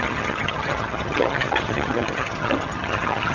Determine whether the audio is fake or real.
fake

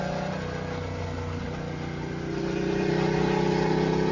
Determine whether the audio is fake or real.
real